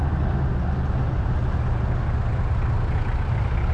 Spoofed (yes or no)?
no